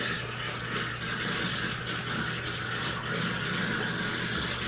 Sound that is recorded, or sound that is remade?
recorded